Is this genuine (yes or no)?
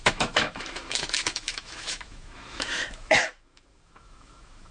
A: no